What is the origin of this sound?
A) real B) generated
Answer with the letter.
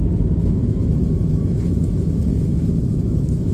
B